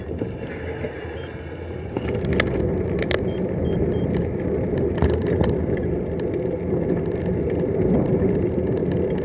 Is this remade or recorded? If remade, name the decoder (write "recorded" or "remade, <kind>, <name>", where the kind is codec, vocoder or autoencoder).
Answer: recorded